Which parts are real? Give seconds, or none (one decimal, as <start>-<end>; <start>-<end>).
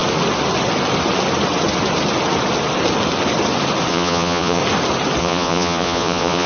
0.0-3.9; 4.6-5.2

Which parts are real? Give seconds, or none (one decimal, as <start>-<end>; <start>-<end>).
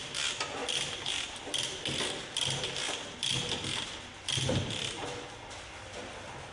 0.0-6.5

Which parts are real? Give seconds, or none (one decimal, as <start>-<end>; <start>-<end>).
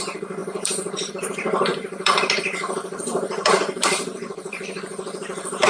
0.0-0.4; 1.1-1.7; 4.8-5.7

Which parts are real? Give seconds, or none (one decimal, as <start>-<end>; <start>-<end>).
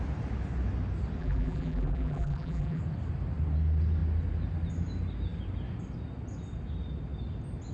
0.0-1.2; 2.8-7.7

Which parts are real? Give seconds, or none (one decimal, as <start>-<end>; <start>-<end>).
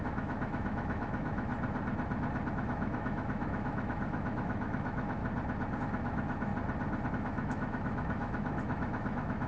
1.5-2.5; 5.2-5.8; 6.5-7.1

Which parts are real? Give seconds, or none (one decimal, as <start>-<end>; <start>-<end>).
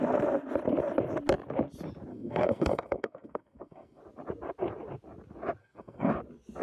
0.0-2.1; 4.0-5.6; 6.1-6.6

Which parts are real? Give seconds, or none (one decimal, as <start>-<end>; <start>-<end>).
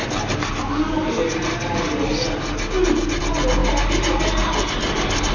0.0-5.3